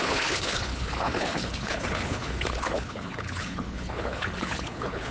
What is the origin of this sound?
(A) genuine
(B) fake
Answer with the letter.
B